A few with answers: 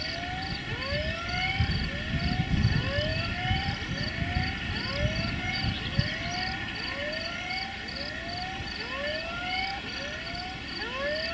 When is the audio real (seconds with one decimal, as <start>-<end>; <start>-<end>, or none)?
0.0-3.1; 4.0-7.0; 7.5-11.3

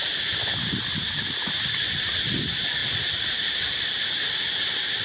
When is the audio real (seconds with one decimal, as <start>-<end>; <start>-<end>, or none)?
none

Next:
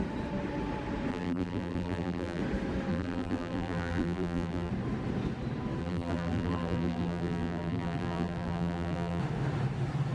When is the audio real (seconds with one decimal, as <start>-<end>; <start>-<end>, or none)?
0.0-1.1; 2.4-2.9; 4.7-5.8; 9.2-10.1

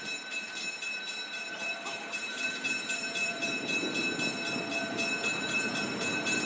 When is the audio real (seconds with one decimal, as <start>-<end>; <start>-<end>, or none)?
3.8-4.7

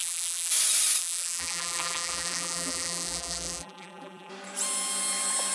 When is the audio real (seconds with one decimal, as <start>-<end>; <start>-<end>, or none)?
0.5-1.0; 4.3-5.5